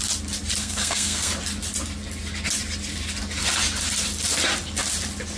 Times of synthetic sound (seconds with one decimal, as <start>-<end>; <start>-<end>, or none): 0.6-1.3